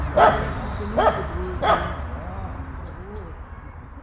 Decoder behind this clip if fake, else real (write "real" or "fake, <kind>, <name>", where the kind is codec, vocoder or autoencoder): real